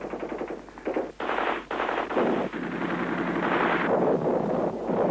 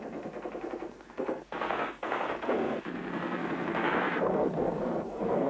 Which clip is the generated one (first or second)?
second